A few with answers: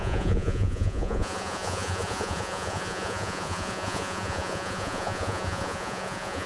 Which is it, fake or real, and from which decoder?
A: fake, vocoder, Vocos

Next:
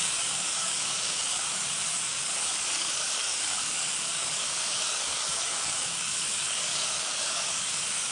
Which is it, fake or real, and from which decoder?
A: fake, codec, DAC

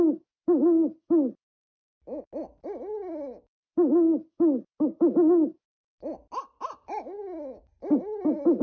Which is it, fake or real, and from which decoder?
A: real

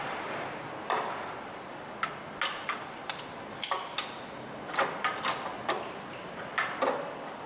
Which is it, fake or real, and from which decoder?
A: real